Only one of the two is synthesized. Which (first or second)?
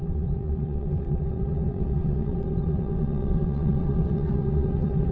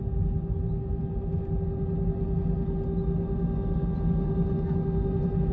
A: first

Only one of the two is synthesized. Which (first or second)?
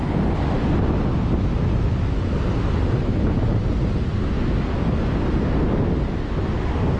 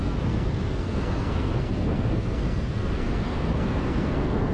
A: second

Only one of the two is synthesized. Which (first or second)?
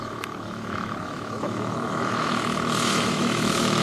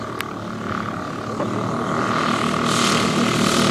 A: first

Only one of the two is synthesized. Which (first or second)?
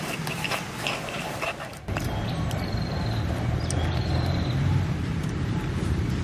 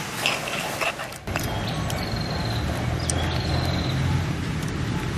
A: first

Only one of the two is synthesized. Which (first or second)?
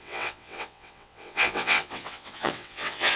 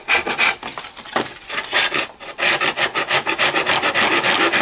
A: first